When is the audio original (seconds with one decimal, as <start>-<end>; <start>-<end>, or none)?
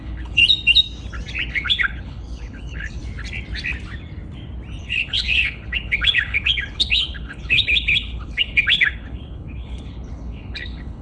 0.4-1.5; 3.0-4.8